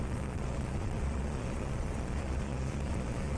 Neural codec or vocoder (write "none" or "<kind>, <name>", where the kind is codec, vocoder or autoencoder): vocoder, Vocos